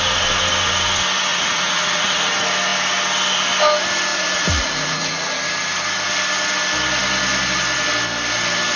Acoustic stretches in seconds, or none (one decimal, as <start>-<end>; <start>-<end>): 0.0-1.3; 2.3-4.1; 5.3-8.8